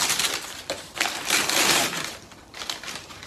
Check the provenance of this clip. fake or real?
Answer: fake